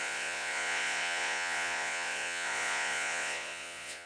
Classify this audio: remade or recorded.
remade